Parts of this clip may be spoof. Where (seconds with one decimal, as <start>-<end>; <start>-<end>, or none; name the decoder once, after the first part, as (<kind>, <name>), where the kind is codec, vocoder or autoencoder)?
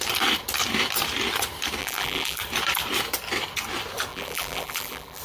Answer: 1.8-2.4 (vocoder, BigVGAN v2); 4.1-5.2